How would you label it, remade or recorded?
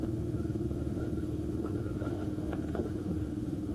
remade